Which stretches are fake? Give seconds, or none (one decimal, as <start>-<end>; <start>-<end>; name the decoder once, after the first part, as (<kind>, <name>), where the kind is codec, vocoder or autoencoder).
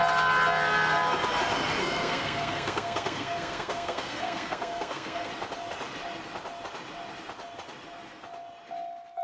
1.8-5.3 (codec, SNAC)